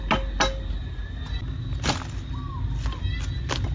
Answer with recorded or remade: recorded